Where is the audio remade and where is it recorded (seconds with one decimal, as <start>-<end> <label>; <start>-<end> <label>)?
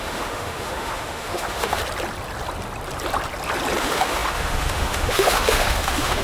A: 0.0-1.8 remade; 1.8-3.8 recorded; 3.8-6.2 remade